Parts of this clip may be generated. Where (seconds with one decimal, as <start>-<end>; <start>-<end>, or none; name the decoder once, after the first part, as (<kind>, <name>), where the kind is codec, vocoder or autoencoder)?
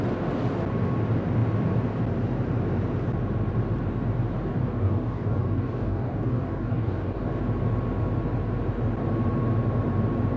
4.5-7.4 (codec, DAC)